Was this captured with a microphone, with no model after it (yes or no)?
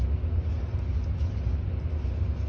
yes